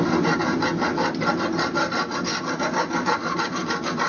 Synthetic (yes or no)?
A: no